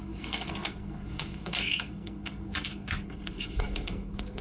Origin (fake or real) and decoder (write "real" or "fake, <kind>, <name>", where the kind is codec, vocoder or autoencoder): fake, codec, SNAC